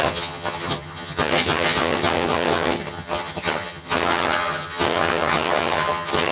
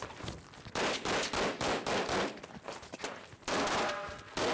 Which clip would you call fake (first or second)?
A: first